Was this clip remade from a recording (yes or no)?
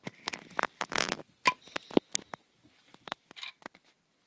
no